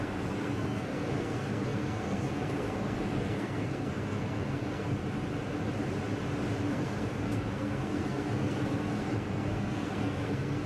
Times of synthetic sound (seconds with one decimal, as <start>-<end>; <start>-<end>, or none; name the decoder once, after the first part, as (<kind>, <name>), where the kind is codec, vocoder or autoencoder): 0.0-5.0 (codec, SNAC); 6.7-10.7